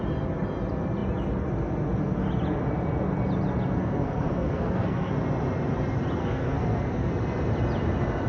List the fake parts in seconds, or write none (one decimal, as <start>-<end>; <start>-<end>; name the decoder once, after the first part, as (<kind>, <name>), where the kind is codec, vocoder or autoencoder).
3.8-5.1 (codec, SNAC); 6.2-7.1